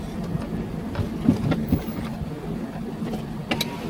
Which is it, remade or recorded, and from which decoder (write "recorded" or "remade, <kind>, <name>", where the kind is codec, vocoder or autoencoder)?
recorded